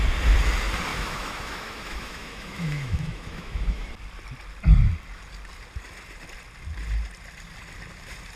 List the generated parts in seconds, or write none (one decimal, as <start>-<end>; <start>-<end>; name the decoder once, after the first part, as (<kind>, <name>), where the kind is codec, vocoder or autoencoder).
0.9-3.9 (autoencoder, DAC-VAE)